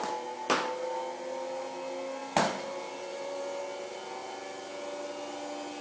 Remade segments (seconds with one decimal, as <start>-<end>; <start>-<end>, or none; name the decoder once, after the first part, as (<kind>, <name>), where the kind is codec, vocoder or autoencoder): 2.2-3.6 (vocoder, BigVGAN v2)